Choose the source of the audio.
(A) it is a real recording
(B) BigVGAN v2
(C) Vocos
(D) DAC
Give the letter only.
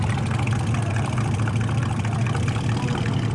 B